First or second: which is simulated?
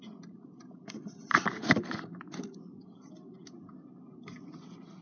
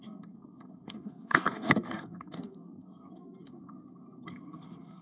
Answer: second